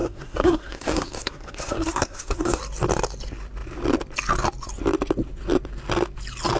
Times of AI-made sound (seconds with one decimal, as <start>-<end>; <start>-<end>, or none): 0.0-2.6